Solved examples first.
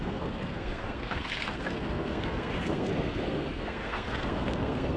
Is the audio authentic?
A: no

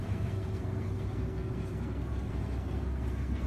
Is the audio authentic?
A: no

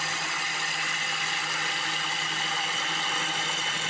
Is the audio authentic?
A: yes